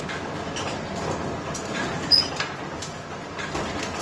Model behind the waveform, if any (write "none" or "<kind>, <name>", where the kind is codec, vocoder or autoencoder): none